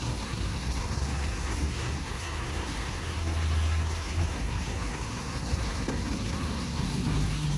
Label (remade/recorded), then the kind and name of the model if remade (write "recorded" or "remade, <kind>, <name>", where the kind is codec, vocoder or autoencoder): remade, codec, SNAC